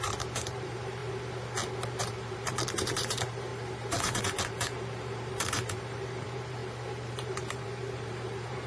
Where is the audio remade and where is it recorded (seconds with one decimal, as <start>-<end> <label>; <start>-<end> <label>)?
0.0-1.0 remade; 1.0-2.0 recorded; 2.0-6.6 remade; 6.6-7.1 recorded; 7.1-8.7 remade